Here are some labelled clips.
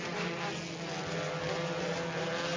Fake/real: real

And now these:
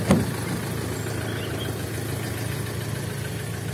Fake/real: real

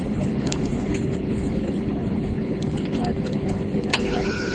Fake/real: fake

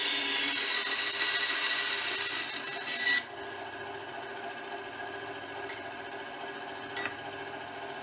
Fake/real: real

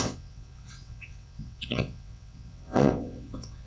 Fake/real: fake